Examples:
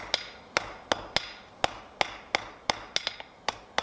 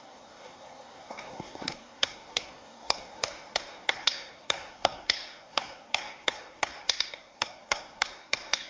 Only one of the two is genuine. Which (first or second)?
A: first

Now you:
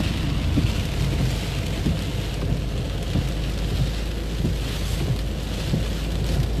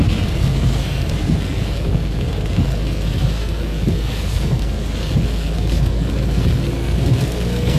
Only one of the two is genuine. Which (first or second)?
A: first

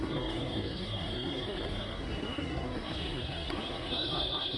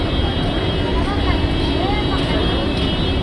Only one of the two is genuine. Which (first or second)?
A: second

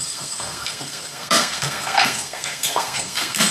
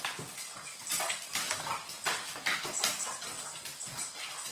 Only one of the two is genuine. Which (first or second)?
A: second